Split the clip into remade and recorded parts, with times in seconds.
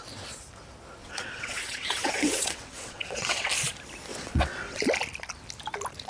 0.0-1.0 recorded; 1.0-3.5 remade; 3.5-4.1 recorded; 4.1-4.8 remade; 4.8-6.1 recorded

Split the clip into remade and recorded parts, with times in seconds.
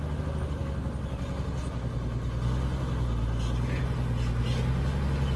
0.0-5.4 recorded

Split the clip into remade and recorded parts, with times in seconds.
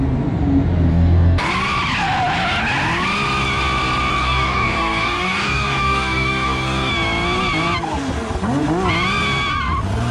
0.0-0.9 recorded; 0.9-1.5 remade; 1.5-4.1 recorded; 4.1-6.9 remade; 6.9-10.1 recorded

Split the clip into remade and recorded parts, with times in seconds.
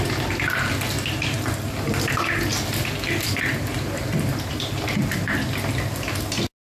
0.0-6.7 recorded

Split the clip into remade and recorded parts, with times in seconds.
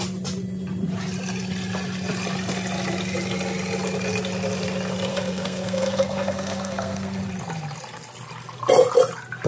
0.0-5.1 recorded; 5.1-7.2 remade; 7.2-9.5 recorded